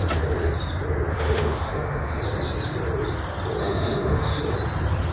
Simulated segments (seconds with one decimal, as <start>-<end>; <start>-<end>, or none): 1.1-2.2; 3.6-4.4